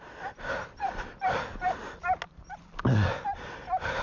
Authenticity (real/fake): real